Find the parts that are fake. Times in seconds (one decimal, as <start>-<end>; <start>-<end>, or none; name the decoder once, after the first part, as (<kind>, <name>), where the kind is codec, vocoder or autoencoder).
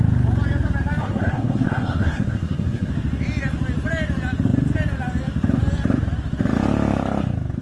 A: 1.0-2.9 (codec, SNAC)